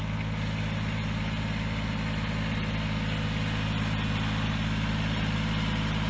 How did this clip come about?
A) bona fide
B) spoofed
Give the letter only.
A